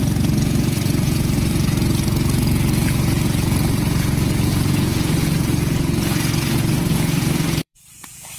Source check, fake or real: fake